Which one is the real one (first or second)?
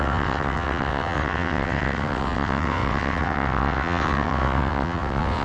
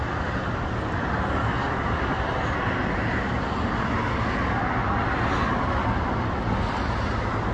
second